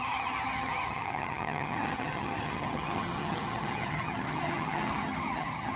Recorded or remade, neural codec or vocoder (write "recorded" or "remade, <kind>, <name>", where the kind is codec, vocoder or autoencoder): remade, vocoder, HiFi-GAN